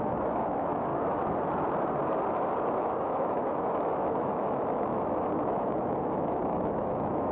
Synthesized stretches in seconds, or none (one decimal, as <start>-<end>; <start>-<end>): 0.0-0.9; 3.0-7.3